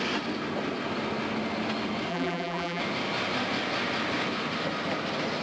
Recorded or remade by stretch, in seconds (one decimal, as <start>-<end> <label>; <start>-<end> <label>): 0.0-2.1 recorded; 2.1-2.8 remade; 2.8-5.4 recorded